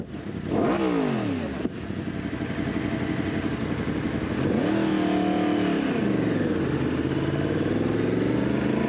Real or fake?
real